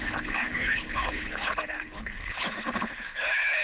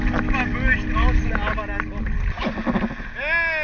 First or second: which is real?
second